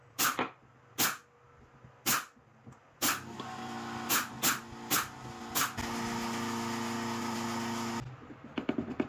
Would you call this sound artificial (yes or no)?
no